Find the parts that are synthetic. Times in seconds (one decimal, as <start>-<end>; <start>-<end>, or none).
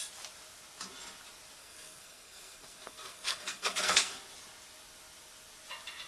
1.6-4.2